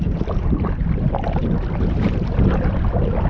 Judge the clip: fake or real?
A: real